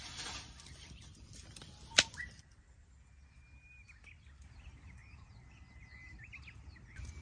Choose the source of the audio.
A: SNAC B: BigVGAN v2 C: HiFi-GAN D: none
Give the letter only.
B